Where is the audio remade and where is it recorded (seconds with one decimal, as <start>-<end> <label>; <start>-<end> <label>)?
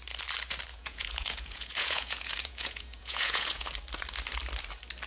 0.0-0.7 recorded; 0.7-3.7 remade; 3.7-5.1 recorded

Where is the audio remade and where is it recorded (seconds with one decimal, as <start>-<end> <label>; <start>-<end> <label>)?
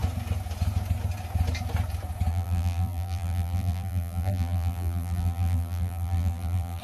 0.0-2.3 recorded; 2.3-6.8 remade